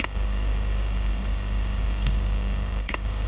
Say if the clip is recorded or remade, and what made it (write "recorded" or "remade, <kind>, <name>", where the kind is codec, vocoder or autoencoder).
remade, codec, DAC